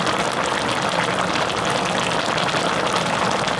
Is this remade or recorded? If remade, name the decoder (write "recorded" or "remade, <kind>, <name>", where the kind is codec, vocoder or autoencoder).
recorded